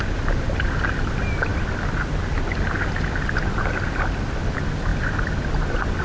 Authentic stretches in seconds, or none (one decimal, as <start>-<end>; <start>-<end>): 0.0-6.0